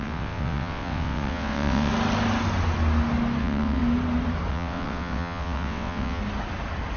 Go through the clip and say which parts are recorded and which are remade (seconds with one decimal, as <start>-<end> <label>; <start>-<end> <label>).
0.0-1.9 remade; 1.9-3.4 recorded; 3.4-3.8 remade; 3.8-4.5 recorded; 4.5-6.2 remade; 6.2-7.0 recorded

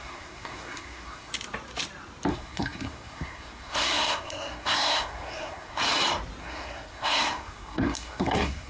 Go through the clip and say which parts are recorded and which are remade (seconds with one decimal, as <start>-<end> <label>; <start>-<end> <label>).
0.0-1.3 remade; 1.3-2.3 recorded; 2.3-5.8 remade; 5.8-6.4 recorded; 6.4-8.7 remade

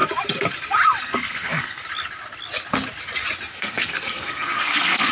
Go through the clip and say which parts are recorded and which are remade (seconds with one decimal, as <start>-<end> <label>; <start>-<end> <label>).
0.0-1.0 recorded; 1.0-1.8 remade; 1.8-3.5 recorded; 3.5-5.1 remade

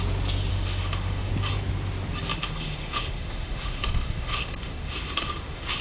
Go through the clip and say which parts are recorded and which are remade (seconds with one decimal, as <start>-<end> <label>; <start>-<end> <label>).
0.0-0.5 recorded; 0.5-1.3 remade; 1.3-2.3 recorded; 2.3-5.8 remade

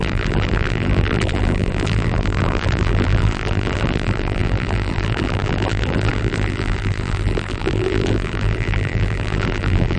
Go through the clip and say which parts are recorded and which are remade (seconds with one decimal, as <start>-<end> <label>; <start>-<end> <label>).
0.0-10.0 remade